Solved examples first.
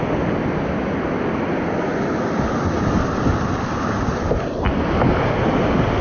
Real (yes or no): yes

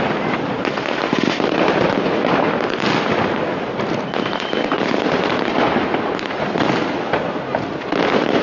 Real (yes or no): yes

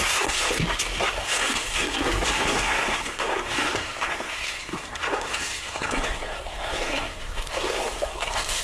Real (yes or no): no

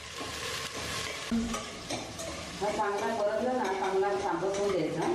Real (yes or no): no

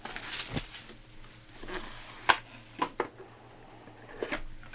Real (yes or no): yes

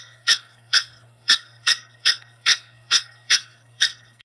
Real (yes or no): no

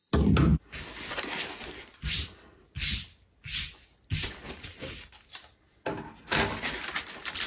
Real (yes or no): yes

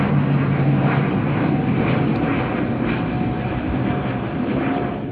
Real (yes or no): yes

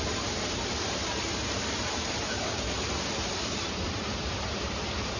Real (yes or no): no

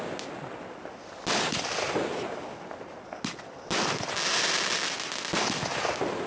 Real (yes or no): yes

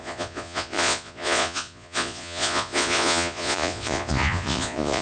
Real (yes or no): no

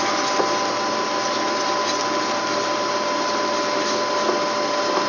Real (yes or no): yes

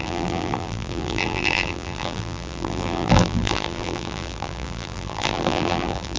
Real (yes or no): no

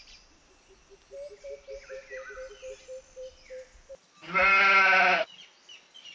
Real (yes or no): yes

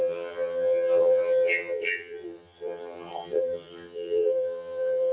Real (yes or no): no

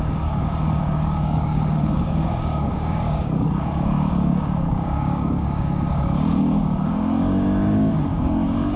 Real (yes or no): no